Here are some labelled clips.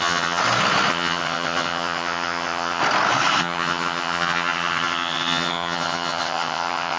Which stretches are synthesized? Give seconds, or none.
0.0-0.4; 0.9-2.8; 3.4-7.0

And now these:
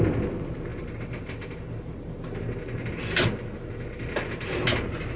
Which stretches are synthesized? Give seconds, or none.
none

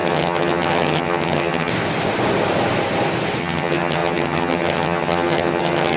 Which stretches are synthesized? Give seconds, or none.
0.0-1.7; 3.4-6.0

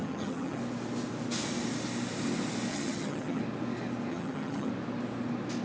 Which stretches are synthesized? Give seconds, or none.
0.0-0.6; 2.7-3.4; 4.1-4.7

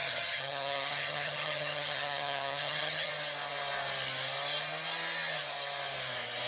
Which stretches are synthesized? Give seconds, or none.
0.0-3.1

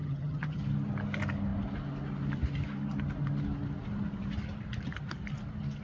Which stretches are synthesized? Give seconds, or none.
0.0-0.6